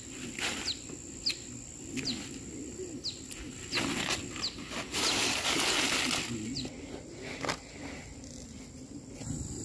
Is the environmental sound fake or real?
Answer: real